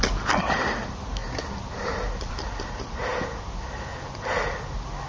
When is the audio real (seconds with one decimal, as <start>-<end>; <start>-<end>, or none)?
0.0-5.1